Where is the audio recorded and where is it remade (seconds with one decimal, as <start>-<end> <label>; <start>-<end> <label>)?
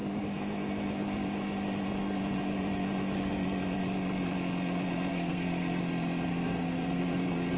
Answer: 0.0-5.1 recorded; 5.1-5.8 remade; 5.8-6.3 recorded; 6.3-7.0 remade; 7.0-7.6 recorded